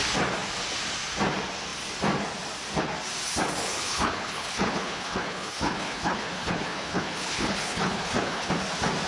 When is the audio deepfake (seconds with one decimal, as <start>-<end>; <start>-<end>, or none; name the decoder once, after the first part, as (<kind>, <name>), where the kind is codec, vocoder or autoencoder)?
3.6-8.5 (codec, HILCodec)